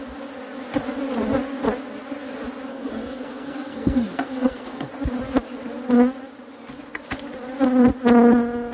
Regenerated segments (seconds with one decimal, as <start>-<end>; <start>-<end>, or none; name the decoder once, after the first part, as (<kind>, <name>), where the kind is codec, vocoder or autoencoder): 2.7-4.9 (codec, SNAC)